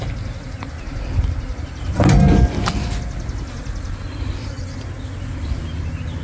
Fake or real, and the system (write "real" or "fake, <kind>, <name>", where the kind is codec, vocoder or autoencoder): real